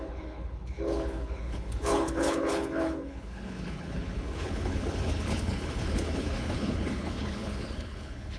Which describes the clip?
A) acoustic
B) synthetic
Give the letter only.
B